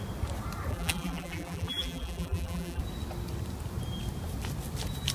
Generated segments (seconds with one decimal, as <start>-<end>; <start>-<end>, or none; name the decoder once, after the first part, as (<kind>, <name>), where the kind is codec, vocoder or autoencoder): 0.7-2.8 (vocoder, BigVGAN v2)